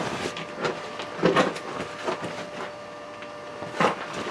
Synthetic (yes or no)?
no